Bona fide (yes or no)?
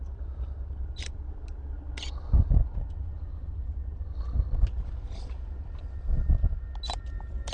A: yes